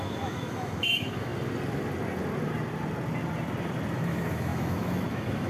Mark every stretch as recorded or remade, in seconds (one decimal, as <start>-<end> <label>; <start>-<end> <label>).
0.0-1.3 remade; 1.3-3.9 recorded; 3.9-5.5 remade